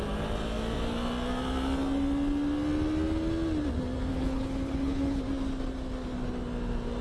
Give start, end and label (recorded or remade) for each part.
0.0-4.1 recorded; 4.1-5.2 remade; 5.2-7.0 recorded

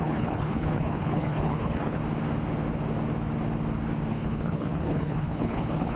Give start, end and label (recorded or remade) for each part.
0.0-2.0 remade; 2.0-4.1 recorded; 4.1-6.0 remade

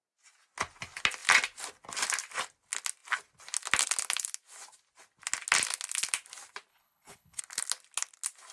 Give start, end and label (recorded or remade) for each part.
0.0-6.7 recorded; 6.7-7.4 remade; 7.4-8.5 recorded